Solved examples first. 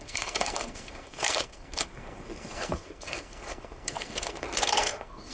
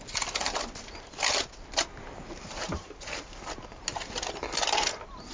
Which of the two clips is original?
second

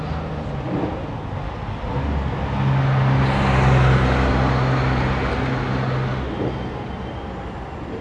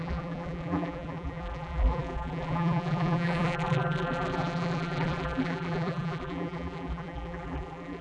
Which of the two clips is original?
first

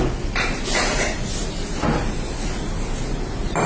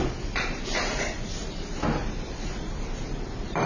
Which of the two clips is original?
first